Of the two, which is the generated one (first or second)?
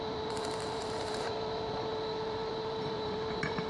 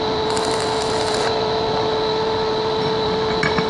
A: first